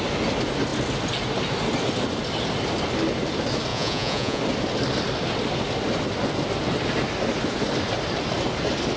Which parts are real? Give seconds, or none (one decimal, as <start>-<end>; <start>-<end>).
0.0-3.7; 4.4-9.0